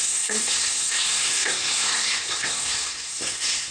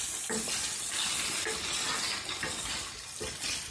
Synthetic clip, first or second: first